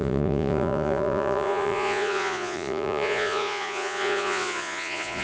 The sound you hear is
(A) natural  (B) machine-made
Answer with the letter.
B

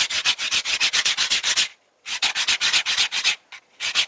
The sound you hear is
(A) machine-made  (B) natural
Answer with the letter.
A